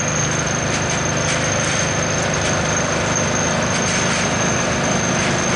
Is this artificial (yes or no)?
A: no